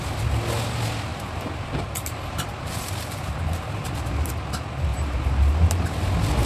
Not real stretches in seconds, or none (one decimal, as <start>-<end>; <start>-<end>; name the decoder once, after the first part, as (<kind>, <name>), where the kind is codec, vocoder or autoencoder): 1.1-4.3 (vocoder, BigVGAN v2); 4.9-5.8